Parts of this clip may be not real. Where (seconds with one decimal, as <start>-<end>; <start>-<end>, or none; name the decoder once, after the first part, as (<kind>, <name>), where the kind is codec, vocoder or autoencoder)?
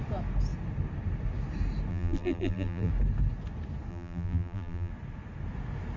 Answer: 1.9-2.9 (vocoder, BigVGAN v2); 3.9-4.9